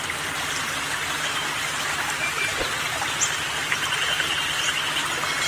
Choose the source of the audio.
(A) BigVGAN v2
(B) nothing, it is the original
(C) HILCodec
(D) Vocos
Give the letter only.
B